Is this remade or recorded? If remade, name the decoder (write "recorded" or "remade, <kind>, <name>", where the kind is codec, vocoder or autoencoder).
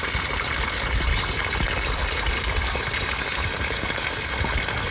recorded